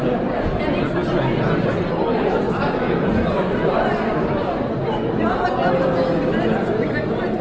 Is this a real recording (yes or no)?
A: yes